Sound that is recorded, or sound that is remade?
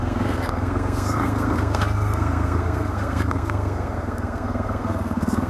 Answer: remade